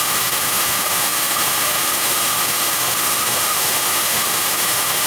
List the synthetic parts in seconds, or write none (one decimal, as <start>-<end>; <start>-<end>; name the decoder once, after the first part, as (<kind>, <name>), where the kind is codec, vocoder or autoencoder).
0.0-5.1 (autoencoder, DAC-VAE)